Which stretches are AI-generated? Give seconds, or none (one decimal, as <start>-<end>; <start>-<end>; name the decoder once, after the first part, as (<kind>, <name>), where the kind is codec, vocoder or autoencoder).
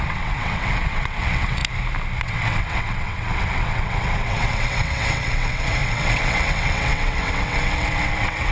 0.0-1.6 (vocoder, WaveNeXt); 2.2-8.5